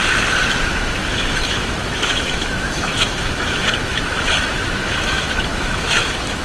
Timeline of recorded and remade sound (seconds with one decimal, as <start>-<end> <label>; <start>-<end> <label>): 0.0-0.7 recorded; 0.7-6.4 remade

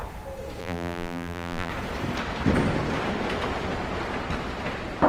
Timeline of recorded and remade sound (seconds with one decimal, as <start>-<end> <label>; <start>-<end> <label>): 0.0-0.6 recorded; 0.6-1.7 remade; 1.7-5.1 recorded

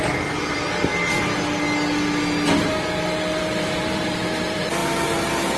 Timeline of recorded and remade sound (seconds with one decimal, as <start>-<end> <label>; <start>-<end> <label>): 0.0-0.9 remade; 0.9-3.4 recorded; 3.4-4.8 remade; 4.8-5.6 recorded

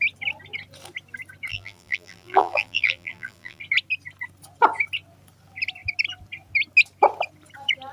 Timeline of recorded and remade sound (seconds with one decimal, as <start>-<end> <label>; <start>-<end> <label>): 0.0-1.5 recorded; 1.5-3.6 remade; 3.6-7.9 recorded

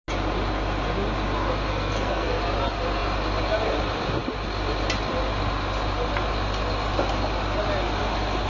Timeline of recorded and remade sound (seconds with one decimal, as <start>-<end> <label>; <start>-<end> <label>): 0.0-1.7 recorded; 1.7-2.4 remade; 2.4-8.5 recorded

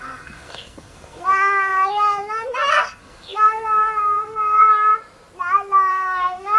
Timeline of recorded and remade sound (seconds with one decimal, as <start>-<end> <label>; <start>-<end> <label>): 0.0-4.9 remade; 4.9-5.9 recorded; 5.9-6.6 remade

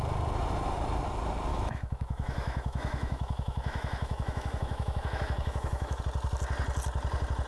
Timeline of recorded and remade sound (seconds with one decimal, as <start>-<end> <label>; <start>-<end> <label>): 0.0-1.5 recorded; 1.5-6.0 remade; 6.0-7.5 recorded

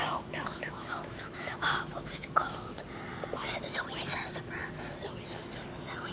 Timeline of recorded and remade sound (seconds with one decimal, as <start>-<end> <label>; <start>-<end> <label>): 0.0-2.8 remade; 2.8-6.1 recorded